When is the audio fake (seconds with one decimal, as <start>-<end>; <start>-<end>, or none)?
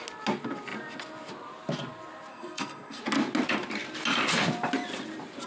2.3-3.0